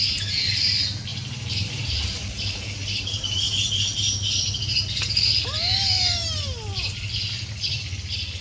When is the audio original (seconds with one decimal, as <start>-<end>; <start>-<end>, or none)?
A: 0.0-1.1; 3.4-8.4